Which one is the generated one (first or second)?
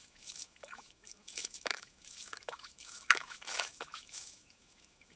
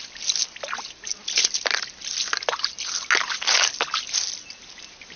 first